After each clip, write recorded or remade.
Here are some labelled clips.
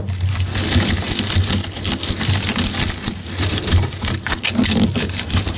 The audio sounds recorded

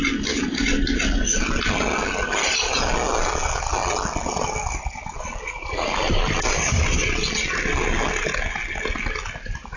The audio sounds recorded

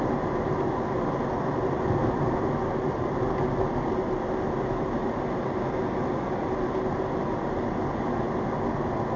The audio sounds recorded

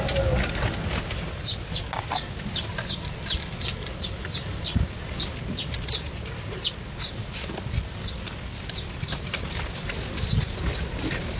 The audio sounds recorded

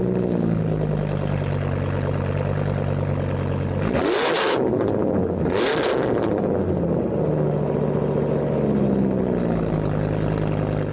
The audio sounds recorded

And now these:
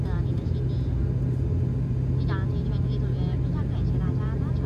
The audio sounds recorded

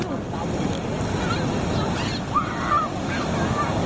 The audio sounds recorded